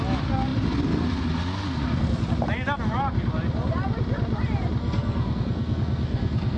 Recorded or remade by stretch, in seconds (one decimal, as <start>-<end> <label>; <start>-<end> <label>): 0.0-4.8 recorded; 4.8-6.6 remade